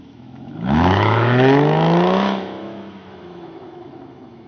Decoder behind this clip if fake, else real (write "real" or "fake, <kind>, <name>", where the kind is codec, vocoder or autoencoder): fake, autoencoder, DAC-VAE